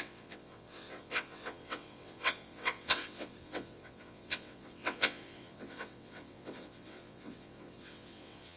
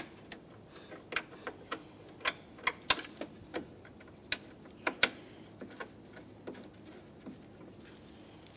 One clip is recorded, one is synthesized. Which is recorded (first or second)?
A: second